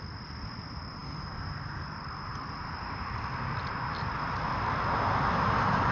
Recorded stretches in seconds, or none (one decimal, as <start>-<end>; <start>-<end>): 0.0-5.9